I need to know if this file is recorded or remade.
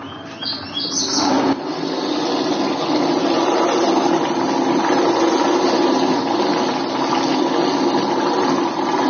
recorded